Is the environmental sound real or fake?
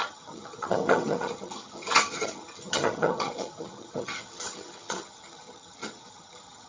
fake